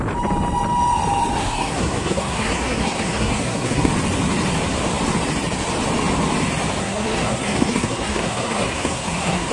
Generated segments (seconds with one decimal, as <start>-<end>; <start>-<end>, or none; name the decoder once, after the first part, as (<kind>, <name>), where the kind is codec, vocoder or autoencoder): 1.4-3.9 (codec, SNAC); 6.8-9.5